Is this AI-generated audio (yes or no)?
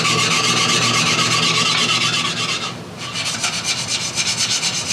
no